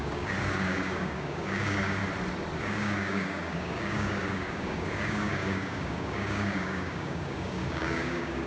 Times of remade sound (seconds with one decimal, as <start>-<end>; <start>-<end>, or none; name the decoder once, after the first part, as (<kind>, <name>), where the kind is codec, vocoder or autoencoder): 0.0-2.0 (codec, DAC); 2.6-8.5